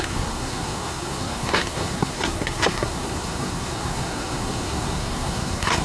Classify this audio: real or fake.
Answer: fake